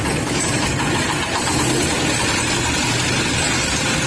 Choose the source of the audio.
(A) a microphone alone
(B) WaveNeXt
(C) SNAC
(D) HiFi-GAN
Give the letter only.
A